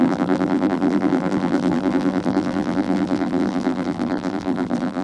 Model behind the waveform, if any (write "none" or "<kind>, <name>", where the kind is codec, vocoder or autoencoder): vocoder, BigVGAN v2